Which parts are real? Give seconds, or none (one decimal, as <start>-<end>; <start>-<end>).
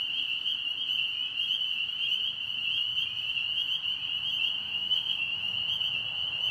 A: 0.0-4.6; 5.4-6.5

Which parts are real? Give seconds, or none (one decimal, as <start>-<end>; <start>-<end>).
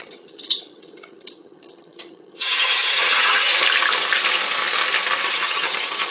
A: 3.5-5.2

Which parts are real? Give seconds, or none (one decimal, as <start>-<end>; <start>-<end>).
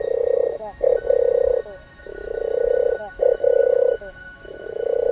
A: 0.9-2.0; 2.4-3.0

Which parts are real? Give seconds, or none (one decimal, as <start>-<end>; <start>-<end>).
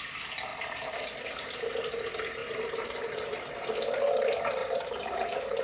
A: 0.0-0.5; 1.5-2.4; 3.5-4.6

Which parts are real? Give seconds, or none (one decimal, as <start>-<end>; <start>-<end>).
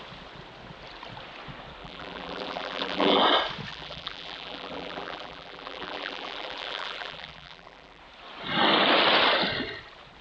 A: 0.0-1.8; 3.2-3.7; 8.0-10.2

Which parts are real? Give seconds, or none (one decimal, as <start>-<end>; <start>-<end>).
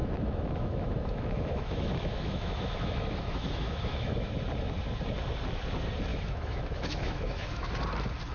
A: 4.3-6.1; 7.7-8.3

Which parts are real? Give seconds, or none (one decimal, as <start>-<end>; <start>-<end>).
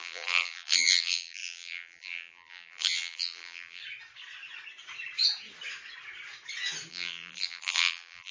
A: 3.8-6.9